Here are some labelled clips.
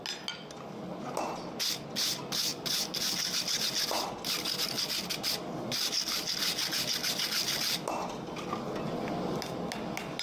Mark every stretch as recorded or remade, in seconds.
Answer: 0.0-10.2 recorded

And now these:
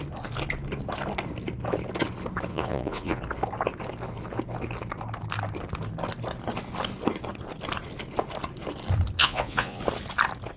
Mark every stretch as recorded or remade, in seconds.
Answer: 0.0-2.5 recorded; 2.5-3.2 remade; 3.2-9.2 recorded; 9.2-9.8 remade; 9.8-10.6 recorded

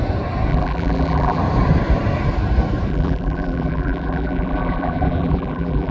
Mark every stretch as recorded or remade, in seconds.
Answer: 0.0-0.5 recorded; 0.5-1.4 remade; 1.4-2.9 recorded; 2.9-5.9 remade

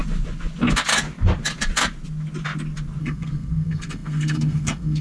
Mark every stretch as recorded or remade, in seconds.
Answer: 0.0-3.0 recorded; 3.0-5.0 remade

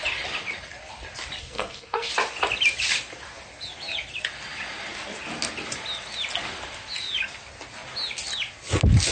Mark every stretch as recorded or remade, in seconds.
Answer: 0.0-1.4 recorded; 1.4-2.1 remade; 2.1-9.1 recorded

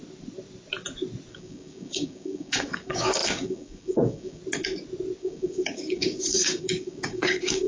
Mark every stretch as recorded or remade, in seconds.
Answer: 0.0-1.3 recorded; 1.3-4.4 remade; 4.4-5.2 recorded; 5.2-7.7 remade